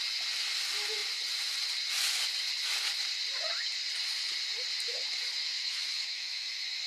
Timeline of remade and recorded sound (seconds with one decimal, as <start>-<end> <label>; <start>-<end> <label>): 0.0-5.4 recorded; 5.4-6.5 remade; 6.5-6.9 recorded